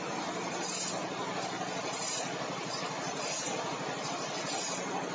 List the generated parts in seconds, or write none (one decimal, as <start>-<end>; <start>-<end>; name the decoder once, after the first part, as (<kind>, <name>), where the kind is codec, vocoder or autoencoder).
none